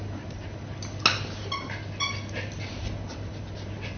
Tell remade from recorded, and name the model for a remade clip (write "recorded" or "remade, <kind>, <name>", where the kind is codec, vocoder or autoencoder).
recorded